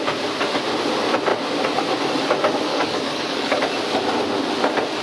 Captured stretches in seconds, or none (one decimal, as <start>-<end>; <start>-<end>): 0.0-2.7; 3.6-5.0